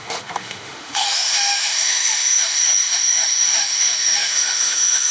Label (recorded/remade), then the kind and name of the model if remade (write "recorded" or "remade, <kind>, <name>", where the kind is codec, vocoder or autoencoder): remade, autoencoder, DAC-VAE